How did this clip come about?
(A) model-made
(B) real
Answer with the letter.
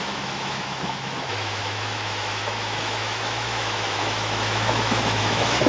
A